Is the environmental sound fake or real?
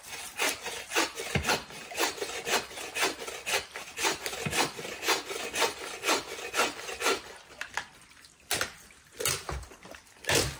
real